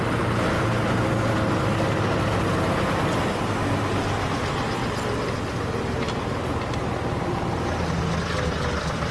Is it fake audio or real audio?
real